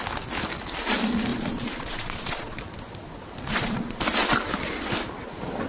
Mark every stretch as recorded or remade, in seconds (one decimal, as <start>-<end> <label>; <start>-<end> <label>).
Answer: 0.0-1.3 recorded; 1.3-2.6 remade; 2.6-3.5 recorded; 3.5-4.0 remade; 4.0-5.7 recorded